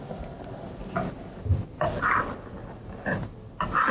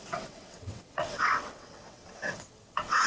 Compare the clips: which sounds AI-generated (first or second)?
second